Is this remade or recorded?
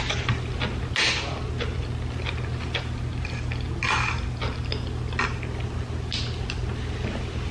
recorded